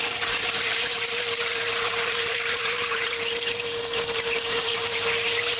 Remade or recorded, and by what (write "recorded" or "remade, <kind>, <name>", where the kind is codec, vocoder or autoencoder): remade, vocoder, BigVGAN v2